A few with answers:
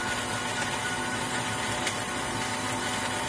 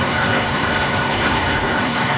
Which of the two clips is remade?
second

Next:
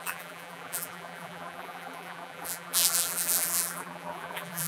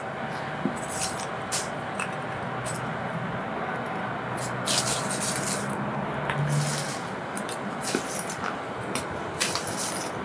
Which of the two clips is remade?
first